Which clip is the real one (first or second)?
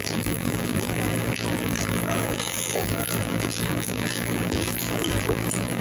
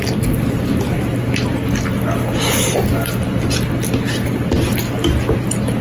second